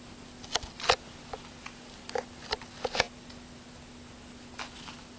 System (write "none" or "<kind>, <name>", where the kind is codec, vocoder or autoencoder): none